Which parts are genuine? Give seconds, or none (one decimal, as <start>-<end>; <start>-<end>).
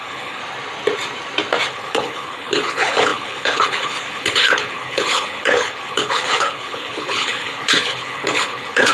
0.4-1.7